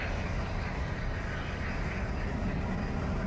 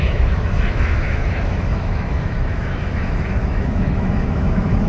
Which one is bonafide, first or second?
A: first